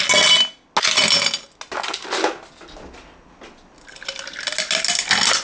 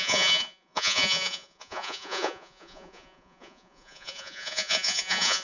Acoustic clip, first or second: first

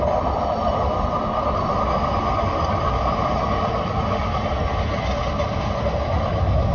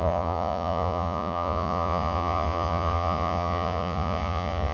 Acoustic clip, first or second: first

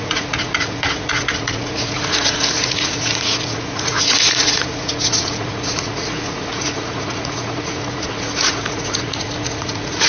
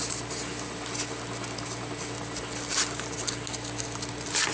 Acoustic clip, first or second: second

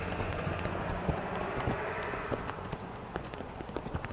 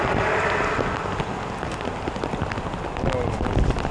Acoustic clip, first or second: second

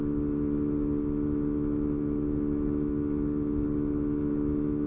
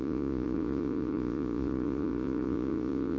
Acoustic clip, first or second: first